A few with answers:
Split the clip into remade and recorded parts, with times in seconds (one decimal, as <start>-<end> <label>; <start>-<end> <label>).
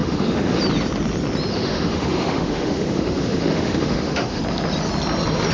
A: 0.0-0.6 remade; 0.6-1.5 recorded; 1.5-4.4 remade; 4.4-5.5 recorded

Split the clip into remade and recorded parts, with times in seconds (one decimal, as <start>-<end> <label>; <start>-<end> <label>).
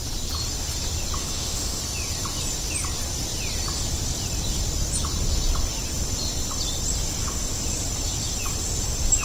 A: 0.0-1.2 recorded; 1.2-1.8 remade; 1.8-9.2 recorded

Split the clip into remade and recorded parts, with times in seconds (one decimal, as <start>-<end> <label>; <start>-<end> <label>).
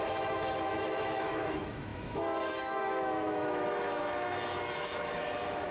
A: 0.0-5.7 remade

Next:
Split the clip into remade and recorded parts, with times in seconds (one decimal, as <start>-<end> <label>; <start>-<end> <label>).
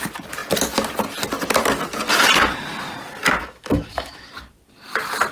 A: 0.0-3.4 recorded; 3.4-4.3 remade; 4.3-5.3 recorded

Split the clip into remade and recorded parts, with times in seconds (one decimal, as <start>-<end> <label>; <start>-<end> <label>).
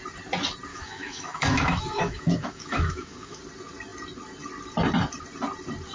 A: 0.0-0.7 recorded; 0.7-3.4 remade; 3.4-5.9 recorded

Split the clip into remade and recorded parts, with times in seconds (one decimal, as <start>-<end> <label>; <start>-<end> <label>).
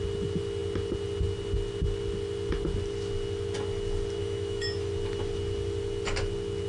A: 0.0-4.2 recorded; 4.2-4.9 remade; 4.9-6.7 recorded